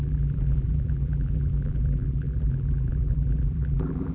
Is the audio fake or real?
fake